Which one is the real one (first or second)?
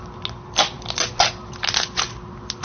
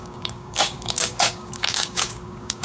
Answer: first